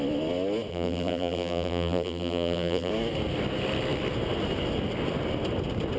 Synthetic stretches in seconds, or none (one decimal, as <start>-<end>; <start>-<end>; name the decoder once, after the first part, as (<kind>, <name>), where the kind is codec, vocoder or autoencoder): 0.7-2.9 (vocoder, BigVGAN v2)